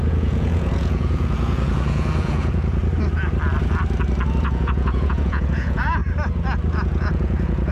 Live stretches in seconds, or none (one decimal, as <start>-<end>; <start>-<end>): 2.8-4.4; 6.0-6.8